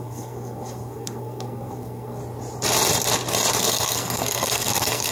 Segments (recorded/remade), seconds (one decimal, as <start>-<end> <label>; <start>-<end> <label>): 0.0-2.2 remade; 2.2-3.5 recorded; 3.5-5.1 remade